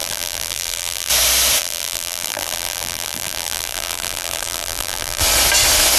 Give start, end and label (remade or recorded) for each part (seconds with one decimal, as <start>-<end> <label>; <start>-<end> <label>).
0.0-1.1 remade; 1.1-1.6 recorded; 1.6-5.2 remade; 5.2-6.0 recorded

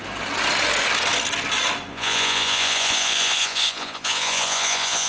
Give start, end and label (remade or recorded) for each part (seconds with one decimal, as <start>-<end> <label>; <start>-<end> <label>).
0.0-1.9 recorded; 1.9-5.1 remade

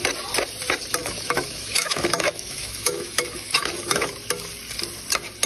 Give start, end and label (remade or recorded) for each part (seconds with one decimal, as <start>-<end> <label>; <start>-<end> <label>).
0.0-1.0 recorded; 1.0-4.1 remade; 4.1-5.5 recorded

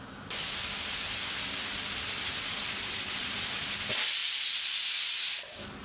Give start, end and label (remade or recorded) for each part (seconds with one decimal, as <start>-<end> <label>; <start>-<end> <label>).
0.0-5.8 recorded